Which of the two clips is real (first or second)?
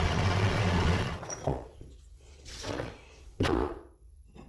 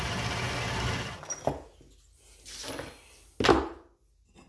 second